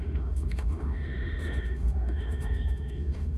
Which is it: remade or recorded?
remade